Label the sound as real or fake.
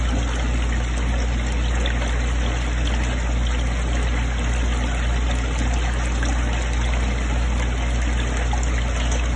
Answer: real